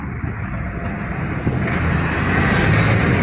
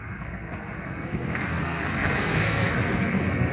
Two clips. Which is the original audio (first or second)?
first